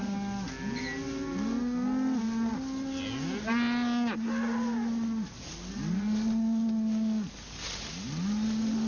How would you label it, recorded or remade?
recorded